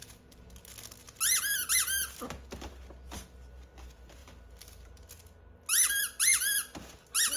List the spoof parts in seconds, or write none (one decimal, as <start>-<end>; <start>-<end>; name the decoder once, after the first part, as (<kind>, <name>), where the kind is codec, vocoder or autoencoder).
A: none